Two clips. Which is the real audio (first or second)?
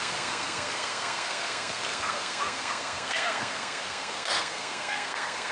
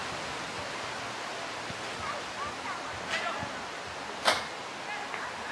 second